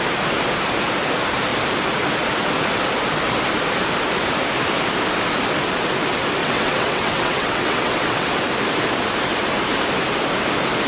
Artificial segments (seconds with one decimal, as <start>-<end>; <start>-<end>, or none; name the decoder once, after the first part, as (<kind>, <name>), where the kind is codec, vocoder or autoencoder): 6.4-8.3 (vocoder, WaveNeXt)